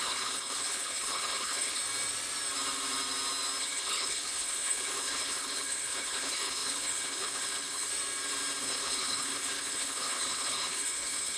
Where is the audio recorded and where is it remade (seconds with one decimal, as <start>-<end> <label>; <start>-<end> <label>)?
0.0-1.8 remade; 1.8-3.6 recorded; 3.6-7.9 remade; 7.9-8.6 recorded; 8.6-11.4 remade